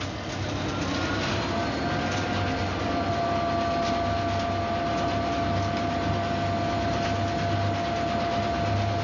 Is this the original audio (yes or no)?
yes